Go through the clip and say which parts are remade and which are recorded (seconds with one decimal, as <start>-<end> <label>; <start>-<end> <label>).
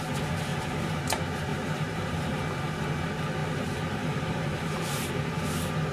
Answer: 0.0-0.5 recorded; 0.5-1.0 remade; 1.0-1.5 recorded; 1.5-2.3 remade; 2.3-3.4 recorded; 3.4-5.3 remade; 5.3-5.9 recorded